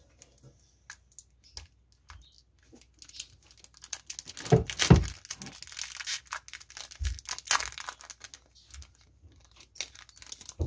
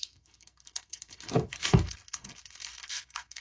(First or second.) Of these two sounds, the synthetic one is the second